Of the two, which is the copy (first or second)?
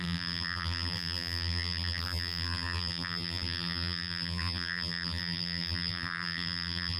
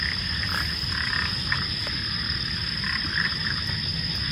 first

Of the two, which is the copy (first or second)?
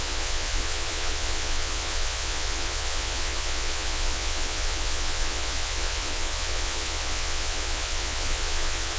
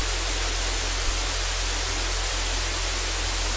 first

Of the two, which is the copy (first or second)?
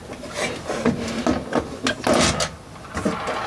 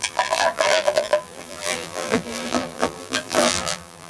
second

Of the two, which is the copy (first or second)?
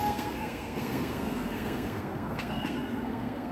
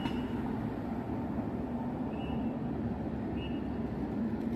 first